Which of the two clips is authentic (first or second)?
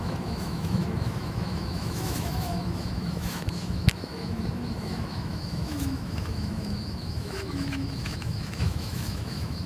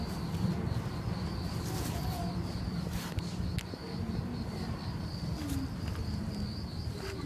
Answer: second